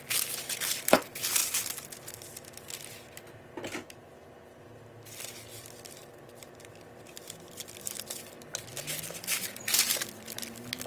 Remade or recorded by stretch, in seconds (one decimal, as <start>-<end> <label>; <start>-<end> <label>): 0.0-10.9 recorded